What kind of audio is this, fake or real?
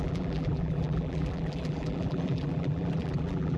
fake